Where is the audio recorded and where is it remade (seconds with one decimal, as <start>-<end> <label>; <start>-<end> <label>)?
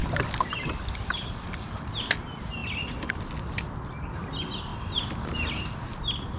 0.0-6.4 recorded